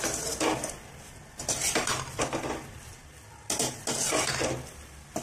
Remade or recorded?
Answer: recorded